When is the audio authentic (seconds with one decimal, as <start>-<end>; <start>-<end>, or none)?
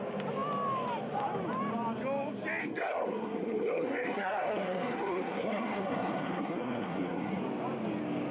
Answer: 0.0-2.6; 7.4-8.3